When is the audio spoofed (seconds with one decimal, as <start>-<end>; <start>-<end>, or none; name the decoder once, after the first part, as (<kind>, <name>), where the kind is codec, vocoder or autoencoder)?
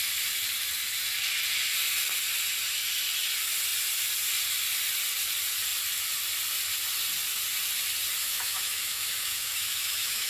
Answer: 8.2-10.3 (autoencoder, DAC-VAE)